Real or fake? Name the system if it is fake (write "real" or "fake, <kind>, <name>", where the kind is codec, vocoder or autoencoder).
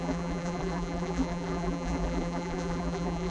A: fake, vocoder, BigVGAN v2